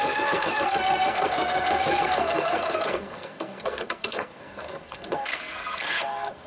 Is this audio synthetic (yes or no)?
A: yes